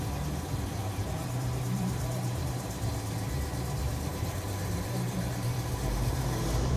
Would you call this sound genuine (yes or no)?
no